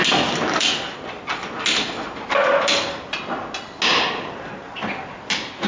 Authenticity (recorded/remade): recorded